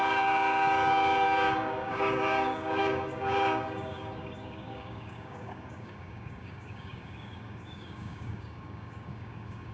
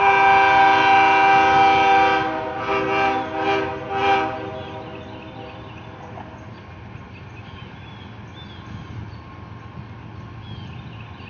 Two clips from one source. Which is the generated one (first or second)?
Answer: first